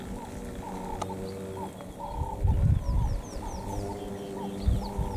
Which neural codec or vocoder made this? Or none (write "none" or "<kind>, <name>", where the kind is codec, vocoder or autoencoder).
none